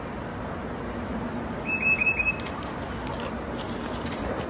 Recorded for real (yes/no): yes